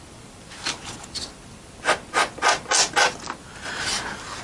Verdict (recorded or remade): recorded